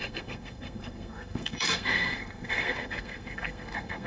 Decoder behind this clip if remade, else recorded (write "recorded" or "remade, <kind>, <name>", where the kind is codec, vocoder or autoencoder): remade, codec, SNAC